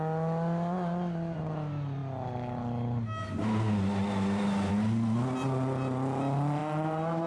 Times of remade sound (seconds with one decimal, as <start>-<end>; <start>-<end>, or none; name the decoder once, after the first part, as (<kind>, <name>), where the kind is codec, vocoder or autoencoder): none